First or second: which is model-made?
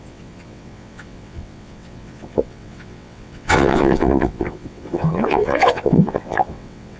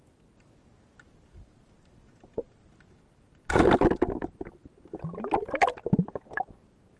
first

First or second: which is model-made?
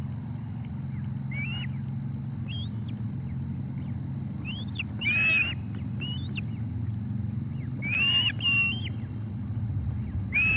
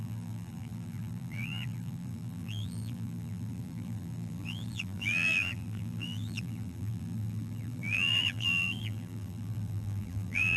second